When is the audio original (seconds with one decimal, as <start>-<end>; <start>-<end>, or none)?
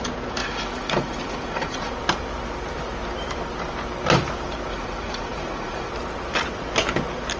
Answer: 0.0-0.4; 1.9-4.7; 5.9-7.4